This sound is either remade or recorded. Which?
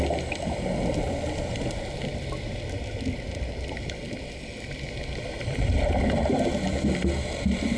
recorded